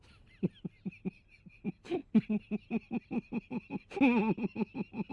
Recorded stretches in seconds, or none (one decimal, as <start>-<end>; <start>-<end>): 0.0-5.1